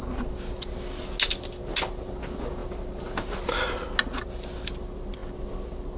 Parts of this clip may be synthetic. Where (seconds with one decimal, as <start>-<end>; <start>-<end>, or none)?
none